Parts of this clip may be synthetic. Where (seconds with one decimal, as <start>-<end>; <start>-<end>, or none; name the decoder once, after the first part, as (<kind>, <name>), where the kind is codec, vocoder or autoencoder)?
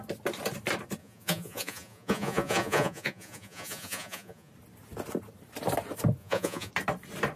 1.0-4.5 (vocoder, Vocos); 6.2-6.7